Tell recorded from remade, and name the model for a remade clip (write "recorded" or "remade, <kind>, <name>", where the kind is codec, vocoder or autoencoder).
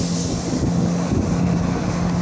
recorded